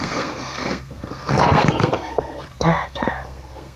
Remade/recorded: remade